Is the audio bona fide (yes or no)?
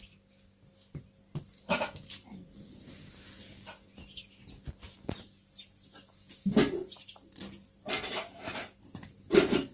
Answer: yes